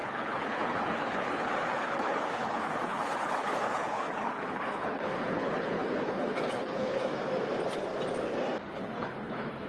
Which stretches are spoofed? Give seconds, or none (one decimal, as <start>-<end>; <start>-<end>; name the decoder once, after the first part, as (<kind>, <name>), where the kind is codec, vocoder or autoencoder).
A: 0.0-7.1 (codec, HILCodec); 8.7-9.7

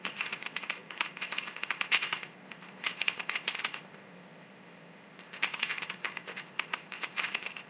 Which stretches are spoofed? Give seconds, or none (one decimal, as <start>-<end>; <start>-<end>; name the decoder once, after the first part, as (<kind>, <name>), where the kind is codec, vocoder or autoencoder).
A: 0.0-7.7 (codec, ZipCodec)